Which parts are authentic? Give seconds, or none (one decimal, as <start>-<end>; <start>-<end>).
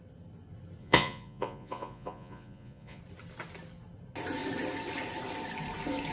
0.0-0.8; 3.0-6.1